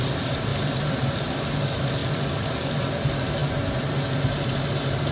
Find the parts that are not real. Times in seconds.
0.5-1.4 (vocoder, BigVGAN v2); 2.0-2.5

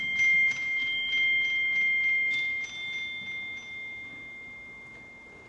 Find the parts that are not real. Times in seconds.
none

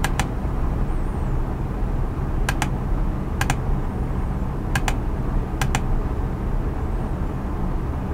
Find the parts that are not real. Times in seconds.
0.0-0.8 (vocoder, BigVGAN v2)

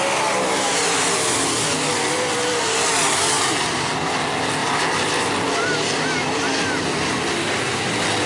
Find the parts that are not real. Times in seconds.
4.6-5.5 (vocoder, BigVGAN v2)